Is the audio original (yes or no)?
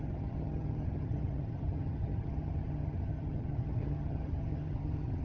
no